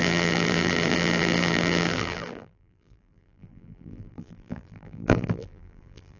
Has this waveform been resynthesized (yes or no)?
yes